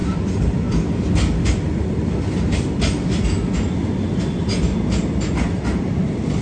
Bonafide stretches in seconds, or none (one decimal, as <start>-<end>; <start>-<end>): 0.0-6.4